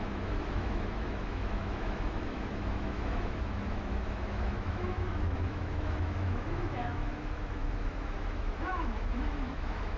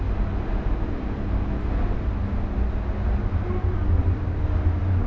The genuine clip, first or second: second